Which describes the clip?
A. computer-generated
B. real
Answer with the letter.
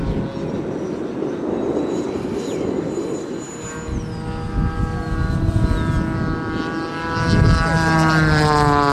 B